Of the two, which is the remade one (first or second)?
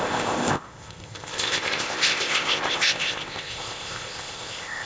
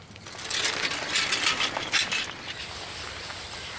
first